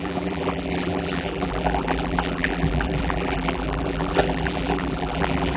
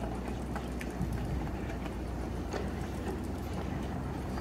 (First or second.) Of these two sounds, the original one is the second